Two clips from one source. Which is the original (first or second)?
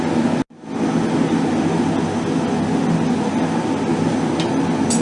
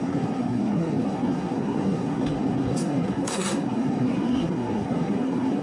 first